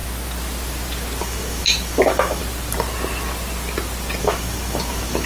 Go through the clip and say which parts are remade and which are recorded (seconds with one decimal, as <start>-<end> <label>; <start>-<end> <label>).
0.0-1.2 recorded; 1.2-2.4 remade; 2.4-4.2 recorded; 4.2-5.3 remade